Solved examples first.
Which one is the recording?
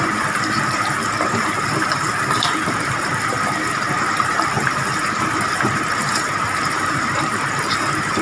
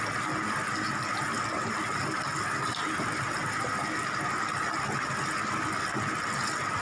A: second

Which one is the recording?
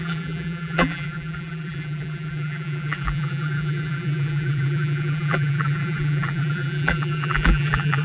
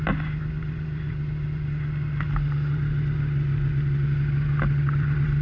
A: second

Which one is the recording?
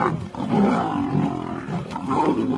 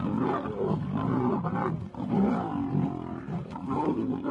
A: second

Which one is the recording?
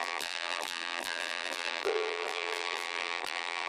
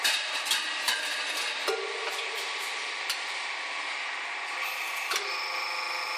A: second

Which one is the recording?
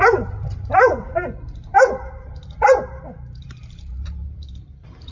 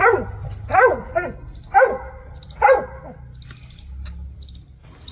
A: second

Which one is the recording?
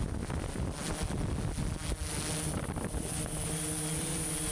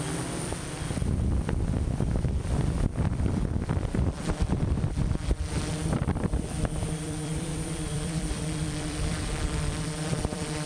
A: first